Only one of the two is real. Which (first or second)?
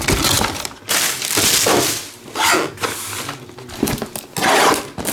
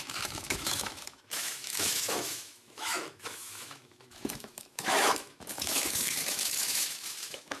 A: first